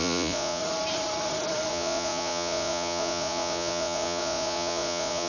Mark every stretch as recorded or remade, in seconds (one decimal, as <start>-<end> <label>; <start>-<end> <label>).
0.0-0.6 remade; 0.6-1.7 recorded; 1.7-5.3 remade